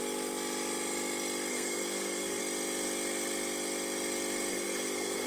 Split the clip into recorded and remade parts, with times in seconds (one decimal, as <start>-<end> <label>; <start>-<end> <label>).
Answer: 0.0-1.5 recorded; 1.5-2.4 remade; 2.4-4.5 recorded; 4.5-5.3 remade